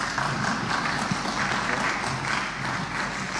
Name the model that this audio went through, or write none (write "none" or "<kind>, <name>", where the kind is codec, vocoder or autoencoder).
none